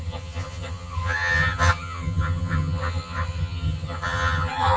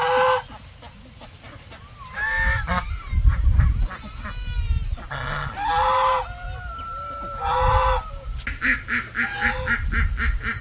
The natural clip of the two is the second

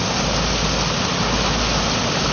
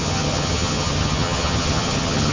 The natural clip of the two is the first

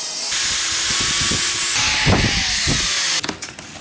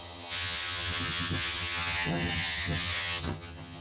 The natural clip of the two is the first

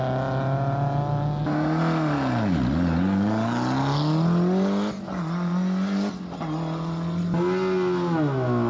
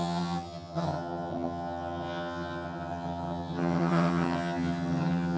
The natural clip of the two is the first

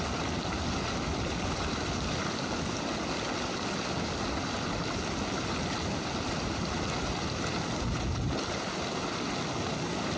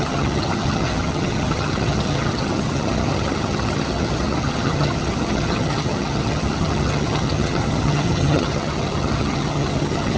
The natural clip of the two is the first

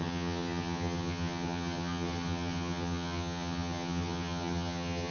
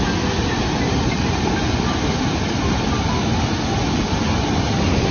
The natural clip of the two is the second